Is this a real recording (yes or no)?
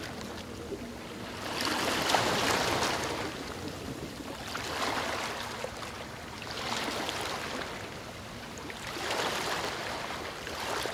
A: yes